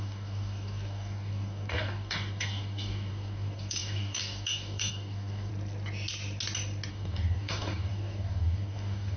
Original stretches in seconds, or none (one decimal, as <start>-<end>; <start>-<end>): 5.5-6.9